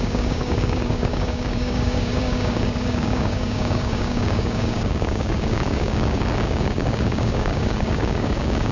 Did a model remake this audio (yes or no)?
yes